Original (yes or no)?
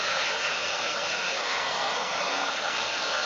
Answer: no